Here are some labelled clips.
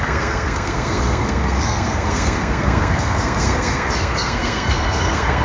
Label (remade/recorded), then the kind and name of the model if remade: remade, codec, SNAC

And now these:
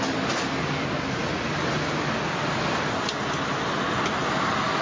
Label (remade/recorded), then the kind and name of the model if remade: recorded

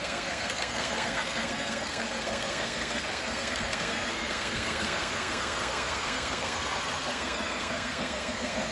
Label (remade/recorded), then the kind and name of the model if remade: remade, codec, SNAC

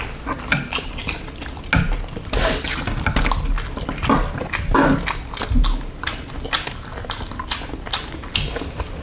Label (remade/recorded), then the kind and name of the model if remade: recorded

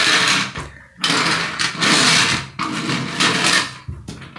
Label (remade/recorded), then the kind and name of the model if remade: recorded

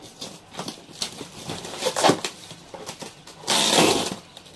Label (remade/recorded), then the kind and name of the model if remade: remade, vocoder, BigVGAN v2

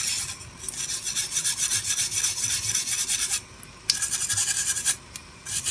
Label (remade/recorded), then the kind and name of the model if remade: recorded